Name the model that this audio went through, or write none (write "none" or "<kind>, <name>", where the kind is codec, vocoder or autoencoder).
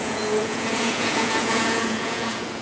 vocoder, Vocos